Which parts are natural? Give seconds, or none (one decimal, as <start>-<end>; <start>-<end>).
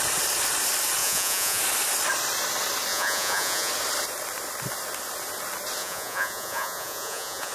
0.0-1.0; 1.6-2.9; 3.7-5.8